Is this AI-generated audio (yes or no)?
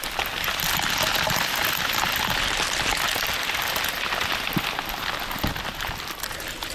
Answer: no